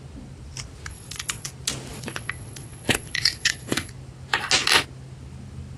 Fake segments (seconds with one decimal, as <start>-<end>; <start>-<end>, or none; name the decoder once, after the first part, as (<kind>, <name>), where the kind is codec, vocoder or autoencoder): 0.9-1.5 (vocoder, Vocos); 1.9-3.9

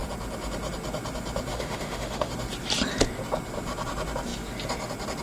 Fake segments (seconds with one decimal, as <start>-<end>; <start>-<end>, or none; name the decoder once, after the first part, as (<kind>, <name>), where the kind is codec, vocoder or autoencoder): 1.5-2.3 (autoencoder, DAC-VAE)

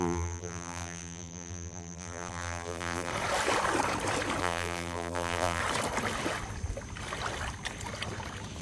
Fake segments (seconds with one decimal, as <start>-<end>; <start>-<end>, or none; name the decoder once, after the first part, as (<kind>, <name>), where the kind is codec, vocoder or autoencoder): 0.0-3.1 (vocoder, BigVGAN v2); 4.4-5.6

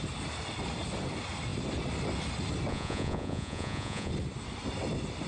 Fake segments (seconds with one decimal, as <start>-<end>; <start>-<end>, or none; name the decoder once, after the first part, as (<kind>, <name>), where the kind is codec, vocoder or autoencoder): 2.7-4.1 (vocoder, Vocos)

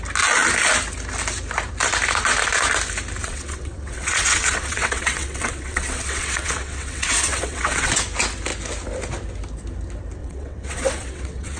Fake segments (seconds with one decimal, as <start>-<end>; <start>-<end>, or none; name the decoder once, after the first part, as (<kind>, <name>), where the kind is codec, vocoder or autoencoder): 3.2-7.9 (vocoder, WaveNeXt); 10.2-11.6